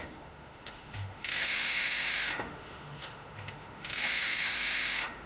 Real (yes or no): no